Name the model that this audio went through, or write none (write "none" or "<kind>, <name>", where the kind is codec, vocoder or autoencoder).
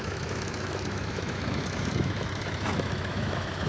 autoencoder, DAC-VAE